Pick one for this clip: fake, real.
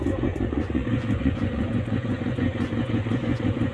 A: fake